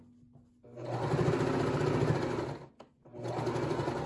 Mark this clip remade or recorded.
recorded